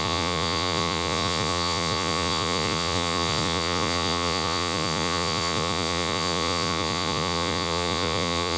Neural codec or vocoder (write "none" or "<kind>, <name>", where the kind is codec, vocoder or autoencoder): vocoder, Vocos